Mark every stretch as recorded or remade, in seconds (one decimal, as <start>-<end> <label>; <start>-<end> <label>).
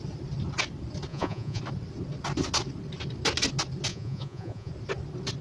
0.0-1.1 recorded; 1.1-1.6 remade; 1.6-3.9 recorded; 3.9-4.7 remade; 4.7-5.4 recorded